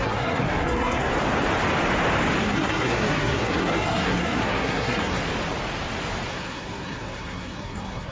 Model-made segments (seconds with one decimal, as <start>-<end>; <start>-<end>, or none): 0.0-1.1; 2.4-5.2; 6.3-8.1

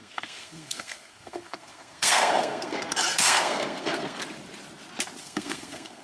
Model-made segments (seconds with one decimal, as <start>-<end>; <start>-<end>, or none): 0.0-4.2; 5.2-6.0